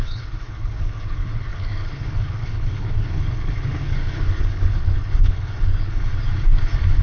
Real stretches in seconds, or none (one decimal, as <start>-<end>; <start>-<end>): 6.1-7.0